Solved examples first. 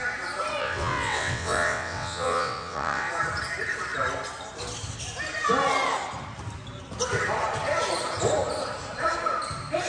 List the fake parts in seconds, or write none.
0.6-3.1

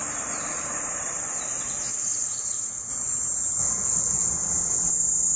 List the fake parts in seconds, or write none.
1.9-2.9; 3.6-4.9

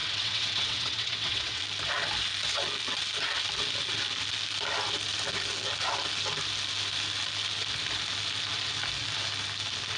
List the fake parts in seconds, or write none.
0.0-1.6

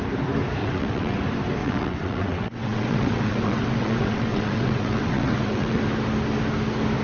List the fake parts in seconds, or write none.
0.6-1.2; 1.6-5.8

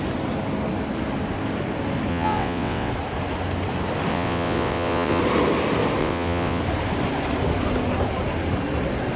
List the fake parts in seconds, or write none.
2.1-2.9; 4.1-5.2; 6.0-6.6

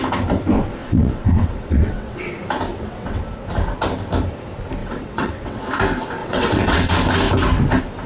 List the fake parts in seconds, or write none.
0.8-2.3; 2.7-3.2; 4.8-5.6; 6.2-6.9